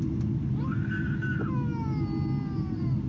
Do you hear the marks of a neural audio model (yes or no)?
no